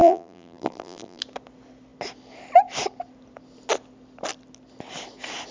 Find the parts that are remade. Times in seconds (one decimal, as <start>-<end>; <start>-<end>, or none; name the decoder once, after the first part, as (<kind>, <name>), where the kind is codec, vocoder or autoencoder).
0.0-1.2 (vocoder, BigVGAN v2)